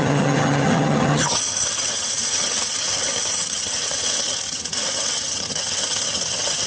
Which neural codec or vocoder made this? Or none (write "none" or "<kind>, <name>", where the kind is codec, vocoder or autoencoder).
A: vocoder, HiFi-GAN